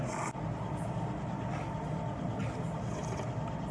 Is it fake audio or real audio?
real